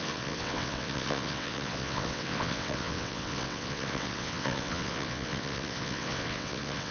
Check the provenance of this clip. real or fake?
fake